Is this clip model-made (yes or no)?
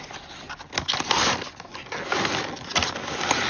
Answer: no